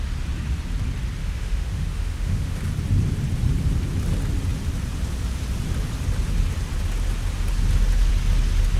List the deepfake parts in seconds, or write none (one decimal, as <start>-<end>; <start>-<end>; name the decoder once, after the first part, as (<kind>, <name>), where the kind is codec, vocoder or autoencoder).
1.2-2.6 (autoencoder, DAC-VAE)